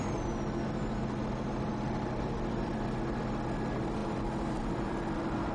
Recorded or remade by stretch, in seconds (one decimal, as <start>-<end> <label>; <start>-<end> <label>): 0.0-4.0 recorded; 4.0-5.0 remade; 5.0-5.5 recorded